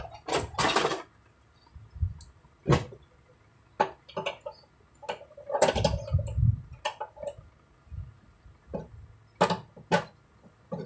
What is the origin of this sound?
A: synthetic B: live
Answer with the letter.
B